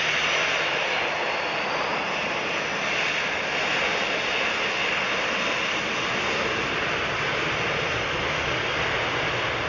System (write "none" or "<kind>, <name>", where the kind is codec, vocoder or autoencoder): none